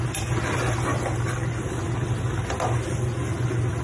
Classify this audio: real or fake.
real